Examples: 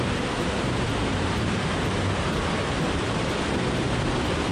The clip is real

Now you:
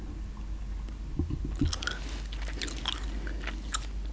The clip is real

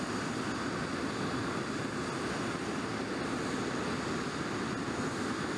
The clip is real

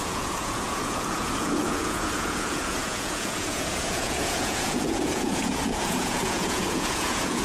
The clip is fake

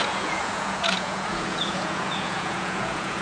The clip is fake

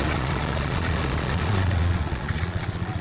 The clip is fake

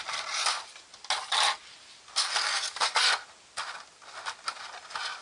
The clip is real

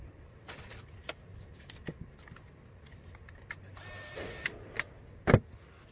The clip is real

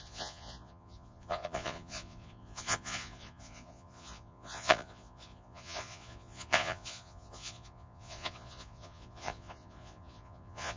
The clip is fake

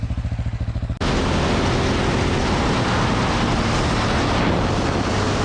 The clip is real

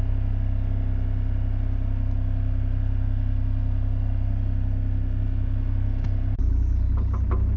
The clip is real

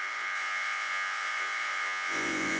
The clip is fake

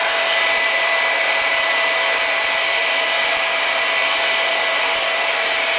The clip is real